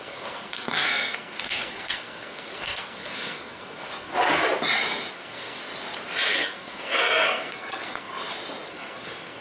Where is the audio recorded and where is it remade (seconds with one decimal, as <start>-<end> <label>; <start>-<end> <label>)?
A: 0.0-4.1 remade; 4.1-5.1 recorded; 5.1-5.7 remade; 5.7-6.3 recorded; 6.3-8.1 remade; 8.1-8.7 recorded; 8.7-9.4 remade